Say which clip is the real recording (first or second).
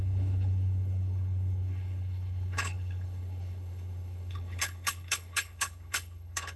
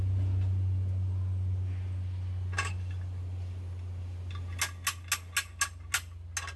second